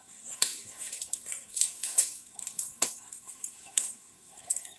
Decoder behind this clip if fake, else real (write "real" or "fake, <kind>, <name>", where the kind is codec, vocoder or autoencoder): fake, codec, SNAC